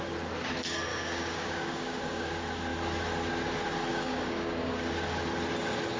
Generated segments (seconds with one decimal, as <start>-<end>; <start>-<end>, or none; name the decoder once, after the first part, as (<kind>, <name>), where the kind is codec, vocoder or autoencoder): 0.9-2.3 (codec, DAC); 3.9-4.9

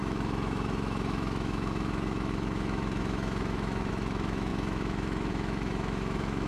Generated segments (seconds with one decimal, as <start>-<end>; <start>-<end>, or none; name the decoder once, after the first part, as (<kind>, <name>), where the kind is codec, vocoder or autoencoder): 0.0-6.5 (autoencoder, DAC-VAE)